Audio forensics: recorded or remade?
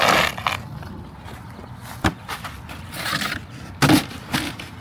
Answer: recorded